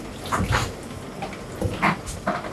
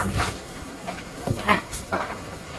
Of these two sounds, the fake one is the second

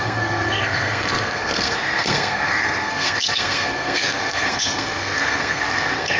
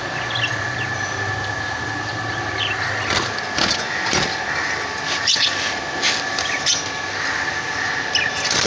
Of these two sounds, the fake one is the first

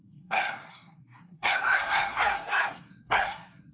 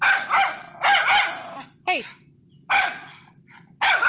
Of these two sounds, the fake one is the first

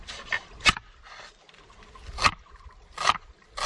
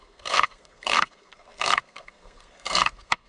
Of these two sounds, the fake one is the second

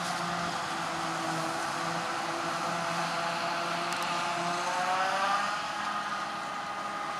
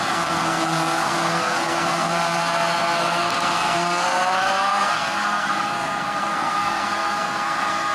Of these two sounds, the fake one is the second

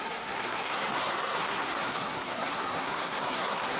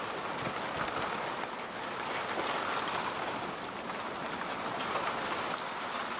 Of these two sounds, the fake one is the first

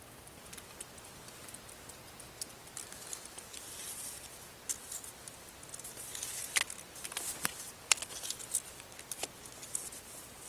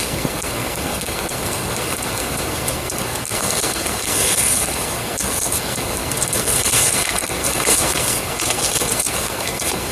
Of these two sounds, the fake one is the second